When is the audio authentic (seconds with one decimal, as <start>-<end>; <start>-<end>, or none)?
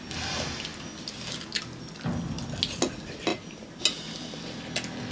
0.0-3.3; 3.8-5.1